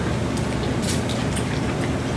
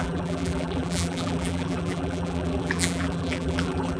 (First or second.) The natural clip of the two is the first